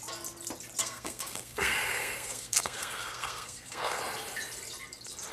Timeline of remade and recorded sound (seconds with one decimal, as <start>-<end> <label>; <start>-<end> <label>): 0.0-0.8 recorded; 0.8-4.0 remade; 4.0-5.3 recorded